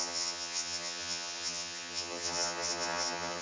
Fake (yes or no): yes